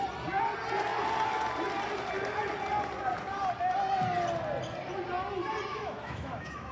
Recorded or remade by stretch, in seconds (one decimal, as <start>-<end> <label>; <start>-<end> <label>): 0.0-5.7 recorded; 5.7-6.7 remade